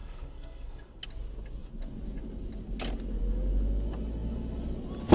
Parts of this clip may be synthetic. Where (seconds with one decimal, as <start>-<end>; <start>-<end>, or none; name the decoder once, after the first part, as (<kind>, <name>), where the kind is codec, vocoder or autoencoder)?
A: 0.0-1.0 (codec, SNAC)